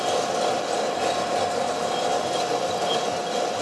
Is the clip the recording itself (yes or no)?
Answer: yes